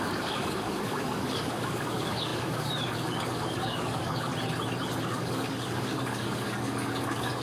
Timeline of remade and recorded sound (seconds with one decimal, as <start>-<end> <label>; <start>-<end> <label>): 0.0-4.3 remade; 4.3-5.0 recorded; 5.0-7.4 remade